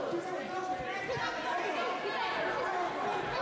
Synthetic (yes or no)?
no